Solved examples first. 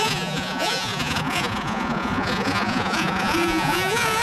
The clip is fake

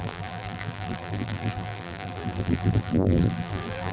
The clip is fake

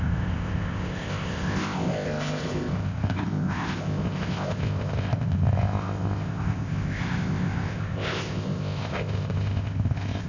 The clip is fake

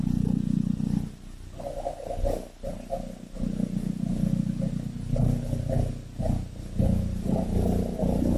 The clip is real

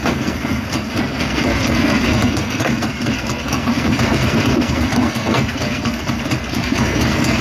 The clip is fake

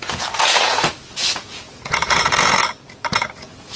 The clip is fake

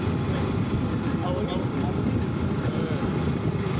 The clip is real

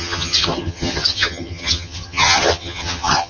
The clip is fake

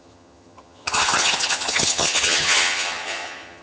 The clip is fake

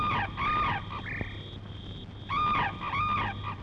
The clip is real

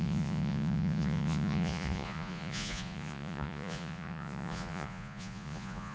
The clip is fake